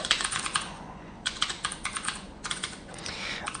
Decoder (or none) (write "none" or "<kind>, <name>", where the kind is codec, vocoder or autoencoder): vocoder, Vocos